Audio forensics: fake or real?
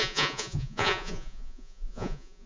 fake